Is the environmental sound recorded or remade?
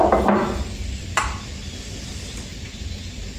recorded